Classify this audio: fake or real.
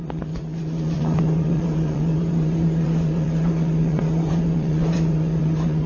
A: fake